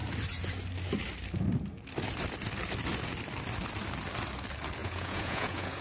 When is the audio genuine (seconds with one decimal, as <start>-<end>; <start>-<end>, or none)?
0.0-4.8

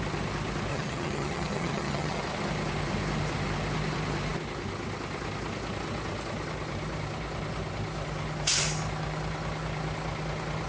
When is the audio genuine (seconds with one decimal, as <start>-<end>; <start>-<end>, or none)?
0.0-0.7; 2.2-10.7